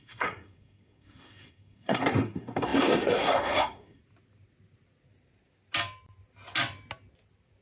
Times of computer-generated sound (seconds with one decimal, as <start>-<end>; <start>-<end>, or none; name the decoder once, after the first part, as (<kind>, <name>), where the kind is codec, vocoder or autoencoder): 0.0-4.0 (codec, SNAC)